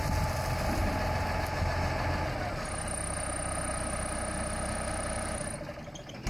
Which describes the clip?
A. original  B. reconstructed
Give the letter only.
A